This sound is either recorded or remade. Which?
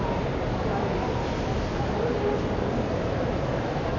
recorded